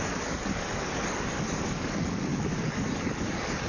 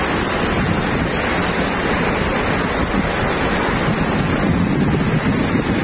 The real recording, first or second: second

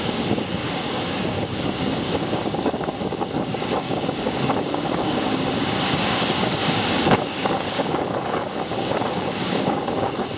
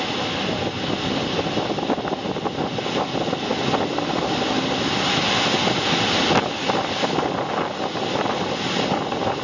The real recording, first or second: second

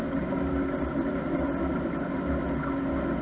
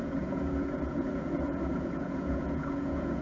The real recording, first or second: first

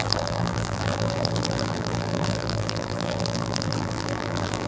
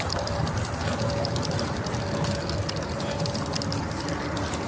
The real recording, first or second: second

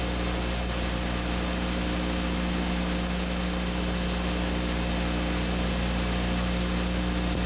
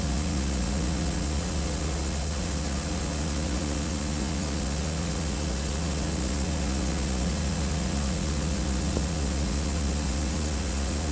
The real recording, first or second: first